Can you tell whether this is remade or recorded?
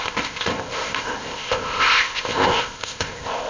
remade